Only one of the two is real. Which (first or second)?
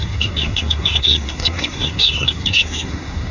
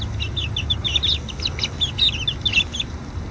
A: second